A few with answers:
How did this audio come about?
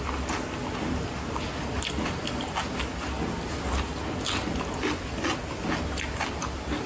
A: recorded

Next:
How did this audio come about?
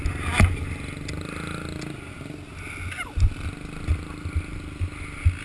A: recorded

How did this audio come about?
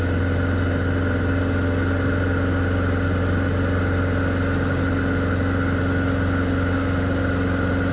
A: recorded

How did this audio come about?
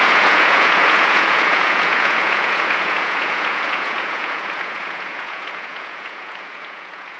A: remade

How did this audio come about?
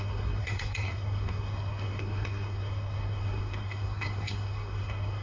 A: remade